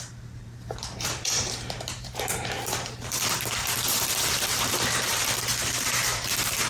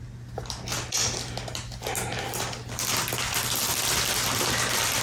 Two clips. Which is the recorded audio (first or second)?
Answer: second